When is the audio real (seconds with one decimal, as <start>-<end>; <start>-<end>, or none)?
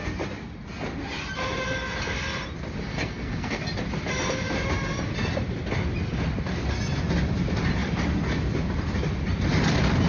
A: 0.0-2.9; 3.6-10.1